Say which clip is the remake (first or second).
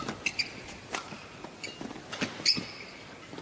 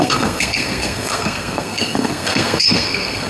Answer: second